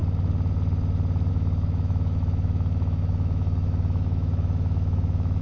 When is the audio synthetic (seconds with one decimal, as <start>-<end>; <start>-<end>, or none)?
1.3-5.4

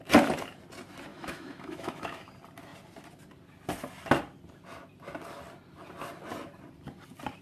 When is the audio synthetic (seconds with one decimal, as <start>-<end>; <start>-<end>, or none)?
1.1-2.3

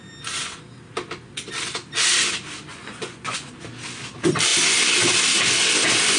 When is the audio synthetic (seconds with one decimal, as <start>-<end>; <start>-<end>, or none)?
2.7-3.5